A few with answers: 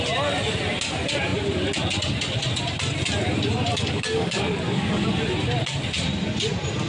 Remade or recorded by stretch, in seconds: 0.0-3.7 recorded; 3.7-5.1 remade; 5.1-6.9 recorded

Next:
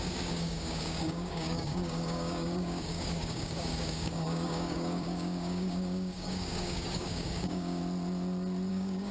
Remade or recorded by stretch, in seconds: 0.0-7.8 remade; 7.8-8.7 recorded; 8.7-9.1 remade